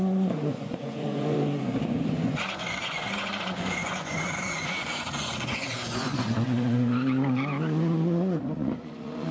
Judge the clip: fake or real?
fake